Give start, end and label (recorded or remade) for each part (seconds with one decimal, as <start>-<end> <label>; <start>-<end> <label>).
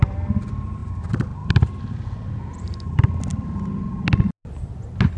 0.0-0.8 recorded; 0.8-1.4 remade; 1.4-5.2 recorded